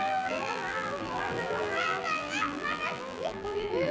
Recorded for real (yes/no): no